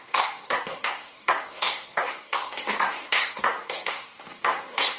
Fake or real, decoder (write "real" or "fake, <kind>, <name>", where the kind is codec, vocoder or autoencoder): fake, codec, SNAC